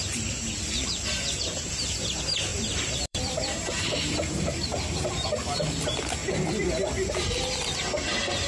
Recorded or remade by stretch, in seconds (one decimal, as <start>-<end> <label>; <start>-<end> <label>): 0.0-1.7 remade; 1.7-2.5 recorded; 2.5-5.7 remade; 5.7-8.5 recorded